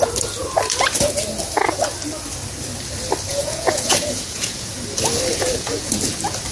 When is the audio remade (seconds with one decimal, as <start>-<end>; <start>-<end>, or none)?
3.3-4.8; 5.3-5.9